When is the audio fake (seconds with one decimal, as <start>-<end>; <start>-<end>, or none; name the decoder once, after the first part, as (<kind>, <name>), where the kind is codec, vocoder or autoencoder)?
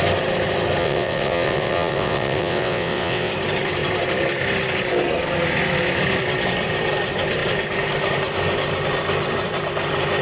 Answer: 0.8-3.3 (vocoder, WaveNeXt)